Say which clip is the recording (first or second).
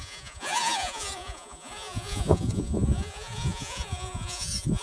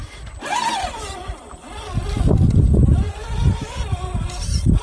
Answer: second